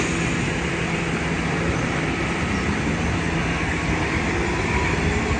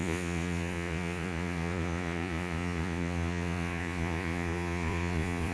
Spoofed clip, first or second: second